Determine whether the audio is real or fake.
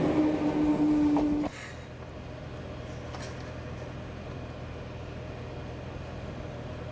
real